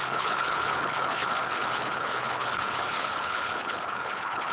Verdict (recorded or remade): remade